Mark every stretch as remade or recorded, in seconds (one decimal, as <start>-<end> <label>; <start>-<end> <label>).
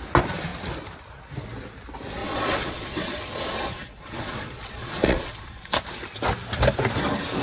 0.0-2.2 recorded; 2.2-5.8 remade; 5.8-7.4 recorded